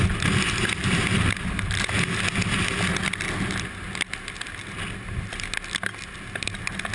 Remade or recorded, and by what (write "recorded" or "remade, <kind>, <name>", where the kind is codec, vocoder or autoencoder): recorded